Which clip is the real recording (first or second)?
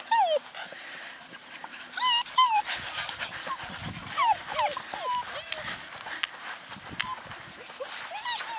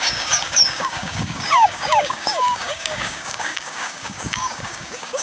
first